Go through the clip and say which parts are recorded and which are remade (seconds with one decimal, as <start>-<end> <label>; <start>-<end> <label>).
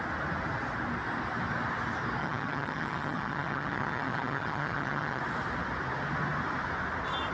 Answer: 0.0-2.2 recorded; 2.2-5.2 remade; 5.2-7.3 recorded